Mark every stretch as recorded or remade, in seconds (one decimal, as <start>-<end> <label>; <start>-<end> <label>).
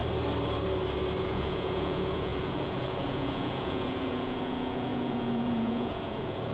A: 0.0-1.2 recorded; 1.2-6.5 remade